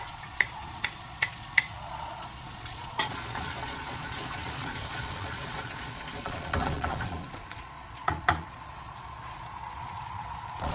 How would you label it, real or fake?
fake